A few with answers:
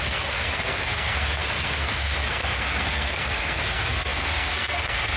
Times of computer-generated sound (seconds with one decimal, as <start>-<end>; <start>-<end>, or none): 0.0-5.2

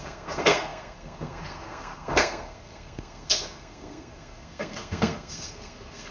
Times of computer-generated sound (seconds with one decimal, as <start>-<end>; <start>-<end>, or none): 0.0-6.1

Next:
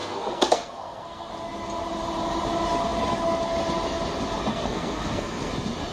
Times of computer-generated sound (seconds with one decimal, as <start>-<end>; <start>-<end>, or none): 0.0-1.3; 4.5-5.5

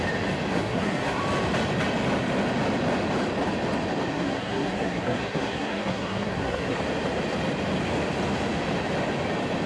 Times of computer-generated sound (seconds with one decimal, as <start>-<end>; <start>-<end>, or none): 0.5-1.2; 4.1-6.8

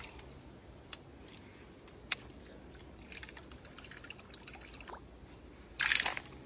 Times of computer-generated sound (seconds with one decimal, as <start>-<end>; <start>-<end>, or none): none

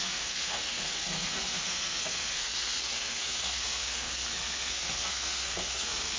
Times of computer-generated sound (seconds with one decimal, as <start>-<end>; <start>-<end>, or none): 0.0-6.2

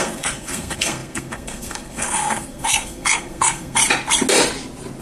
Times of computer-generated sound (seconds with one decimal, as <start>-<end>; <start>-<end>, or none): 0.0-3.8